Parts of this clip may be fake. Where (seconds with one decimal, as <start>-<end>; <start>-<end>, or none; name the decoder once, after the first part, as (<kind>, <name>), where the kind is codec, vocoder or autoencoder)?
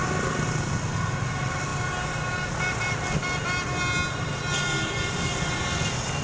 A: none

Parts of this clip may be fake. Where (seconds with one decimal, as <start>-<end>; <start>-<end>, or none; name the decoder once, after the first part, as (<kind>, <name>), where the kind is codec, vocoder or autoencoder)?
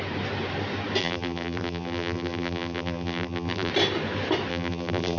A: 1.0-3.7 (vocoder, BigVGAN v2); 4.5-5.2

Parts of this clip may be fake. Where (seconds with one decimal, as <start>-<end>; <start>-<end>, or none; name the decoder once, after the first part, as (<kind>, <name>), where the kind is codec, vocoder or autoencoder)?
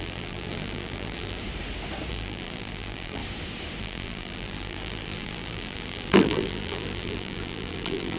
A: 0.0-1.4 (vocoder, BigVGAN v2); 2.1-3.2; 3.8-8.2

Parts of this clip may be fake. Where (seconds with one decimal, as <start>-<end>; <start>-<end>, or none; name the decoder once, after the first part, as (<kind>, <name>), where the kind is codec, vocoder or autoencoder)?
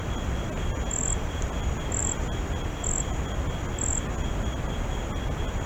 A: none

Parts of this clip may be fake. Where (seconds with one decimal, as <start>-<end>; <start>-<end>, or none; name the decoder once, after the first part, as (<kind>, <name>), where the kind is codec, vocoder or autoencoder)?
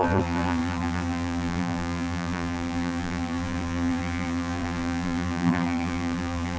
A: 0.0-6.6 (vocoder, BigVGAN v2)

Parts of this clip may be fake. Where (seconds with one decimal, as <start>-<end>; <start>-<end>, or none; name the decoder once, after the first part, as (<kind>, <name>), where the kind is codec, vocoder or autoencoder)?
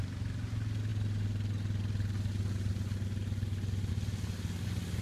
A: none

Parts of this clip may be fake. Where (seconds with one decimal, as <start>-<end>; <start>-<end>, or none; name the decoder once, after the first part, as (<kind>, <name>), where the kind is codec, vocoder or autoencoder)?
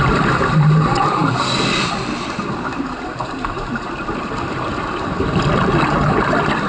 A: 0.0-6.7 (vocoder, BigVGAN v2)